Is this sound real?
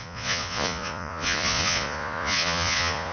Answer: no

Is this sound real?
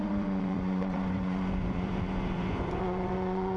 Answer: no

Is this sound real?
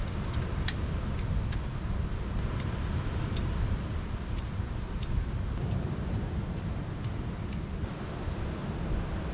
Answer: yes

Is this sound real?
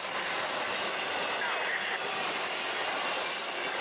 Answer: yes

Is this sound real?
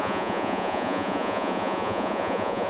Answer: no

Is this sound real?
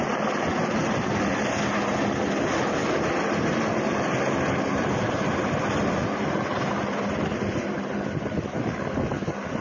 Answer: yes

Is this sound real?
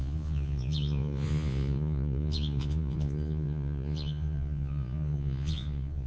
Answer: no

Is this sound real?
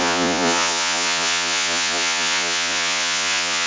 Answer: no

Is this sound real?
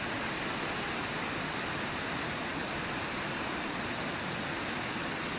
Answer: yes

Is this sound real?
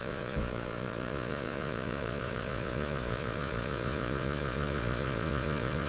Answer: no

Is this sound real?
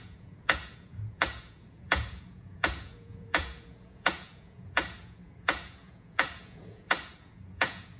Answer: no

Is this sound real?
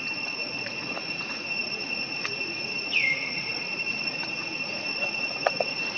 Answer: no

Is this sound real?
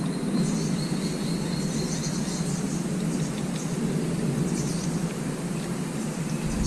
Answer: yes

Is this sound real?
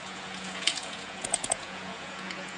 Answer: no